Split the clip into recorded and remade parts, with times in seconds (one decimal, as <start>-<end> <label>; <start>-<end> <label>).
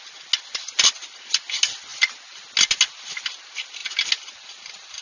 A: 0.0-5.0 recorded